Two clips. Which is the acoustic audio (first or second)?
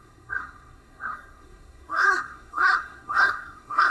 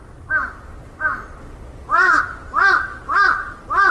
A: second